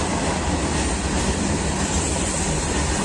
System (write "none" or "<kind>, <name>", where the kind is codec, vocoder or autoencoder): none